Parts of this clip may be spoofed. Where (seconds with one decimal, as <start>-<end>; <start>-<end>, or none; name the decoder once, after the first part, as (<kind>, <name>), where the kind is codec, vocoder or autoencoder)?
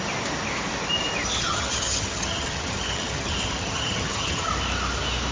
1.3-4.5 (vocoder, HiFi-GAN)